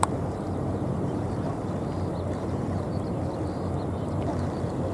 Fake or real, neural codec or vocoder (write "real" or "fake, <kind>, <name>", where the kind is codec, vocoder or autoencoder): fake, vocoder, BigVGAN v2